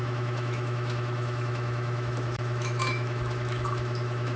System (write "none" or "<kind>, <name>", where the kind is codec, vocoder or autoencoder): autoencoder, DAC-VAE